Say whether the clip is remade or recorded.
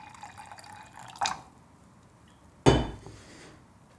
recorded